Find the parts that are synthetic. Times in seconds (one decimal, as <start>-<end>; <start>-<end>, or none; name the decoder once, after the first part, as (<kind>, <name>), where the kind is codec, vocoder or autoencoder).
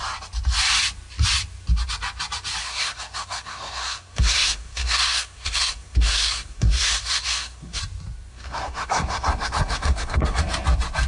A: 2.6-7.8 (codec, SNAC); 8.3-10.4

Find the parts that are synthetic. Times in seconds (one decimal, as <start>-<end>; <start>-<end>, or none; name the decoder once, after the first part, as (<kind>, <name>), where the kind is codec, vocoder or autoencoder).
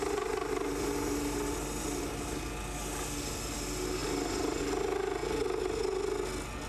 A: none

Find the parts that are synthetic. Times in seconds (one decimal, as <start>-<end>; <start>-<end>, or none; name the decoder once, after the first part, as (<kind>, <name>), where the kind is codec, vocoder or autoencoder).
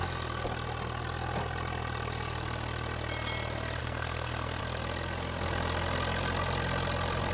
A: 3.8-4.6 (codec, SNAC)